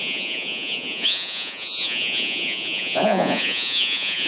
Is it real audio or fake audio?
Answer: fake